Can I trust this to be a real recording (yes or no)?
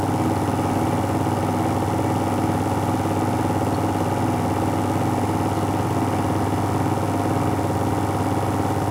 yes